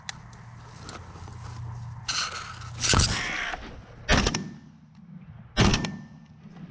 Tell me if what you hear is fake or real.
real